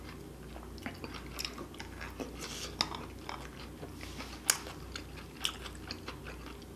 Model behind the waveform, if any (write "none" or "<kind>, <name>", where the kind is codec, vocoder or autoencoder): none